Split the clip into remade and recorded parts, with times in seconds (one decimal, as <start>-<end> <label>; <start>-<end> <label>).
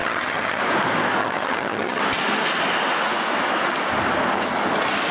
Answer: 0.0-0.6 remade; 0.6-1.2 recorded; 1.2-2.0 remade; 2.0-5.1 recorded